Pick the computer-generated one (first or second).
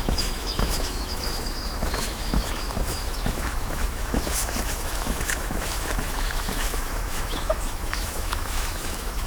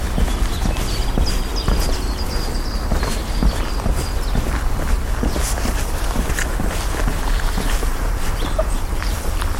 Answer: first